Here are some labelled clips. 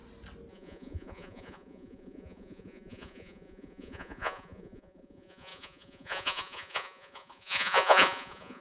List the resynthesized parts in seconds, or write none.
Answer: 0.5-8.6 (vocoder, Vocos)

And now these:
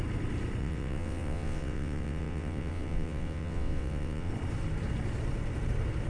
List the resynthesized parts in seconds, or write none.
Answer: 0.6-4.3 (vocoder, WaveNeXt)

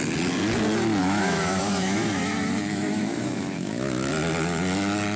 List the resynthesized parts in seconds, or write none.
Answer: 1.0-4.1 (autoencoder, DAC-VAE)

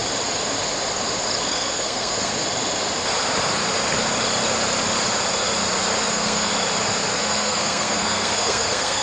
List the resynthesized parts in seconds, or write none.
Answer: 1.4-2.3 (codec, SNAC); 6.1-6.5; 7.2-9.0

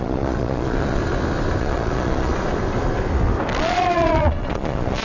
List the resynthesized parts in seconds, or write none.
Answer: 0.0-1.0 (vocoder, Vocos); 1.6-2.3; 3.6-5.0

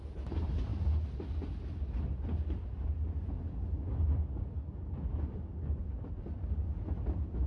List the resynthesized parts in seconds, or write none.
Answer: none